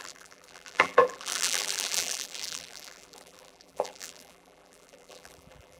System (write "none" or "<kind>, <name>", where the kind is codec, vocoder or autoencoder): vocoder, BigVGAN v2